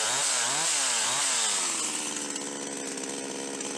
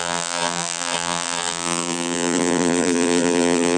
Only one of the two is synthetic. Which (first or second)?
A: second